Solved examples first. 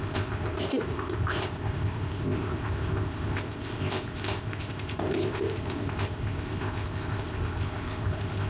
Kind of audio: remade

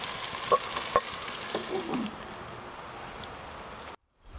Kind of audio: recorded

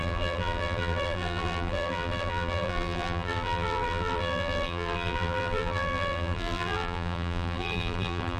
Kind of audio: remade